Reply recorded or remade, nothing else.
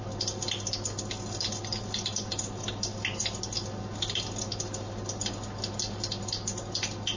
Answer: recorded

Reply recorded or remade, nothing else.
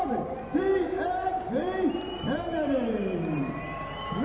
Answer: remade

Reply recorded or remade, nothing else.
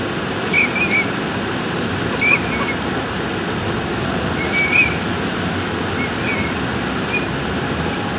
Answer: recorded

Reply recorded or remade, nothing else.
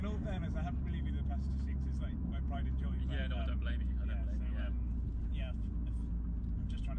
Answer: recorded